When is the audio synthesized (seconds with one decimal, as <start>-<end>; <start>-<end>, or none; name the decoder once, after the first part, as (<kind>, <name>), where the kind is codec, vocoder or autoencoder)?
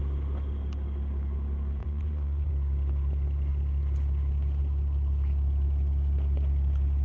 1.8-2.5 (vocoder, Vocos)